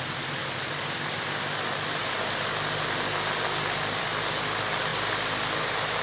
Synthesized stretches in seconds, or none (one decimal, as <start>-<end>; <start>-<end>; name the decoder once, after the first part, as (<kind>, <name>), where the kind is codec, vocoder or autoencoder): none